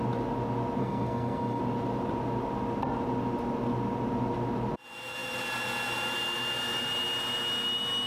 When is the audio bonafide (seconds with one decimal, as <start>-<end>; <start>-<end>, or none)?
0.0-0.8; 1.6-8.1